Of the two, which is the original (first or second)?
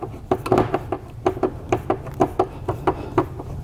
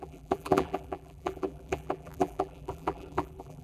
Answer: first